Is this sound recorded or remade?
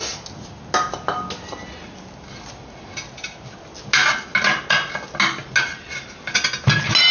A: recorded